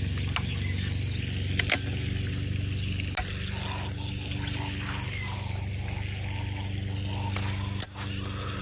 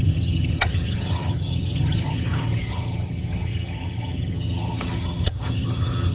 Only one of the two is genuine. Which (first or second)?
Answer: first